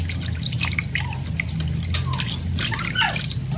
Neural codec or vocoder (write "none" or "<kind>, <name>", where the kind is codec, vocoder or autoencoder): none